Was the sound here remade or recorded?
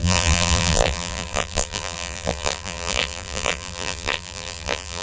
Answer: remade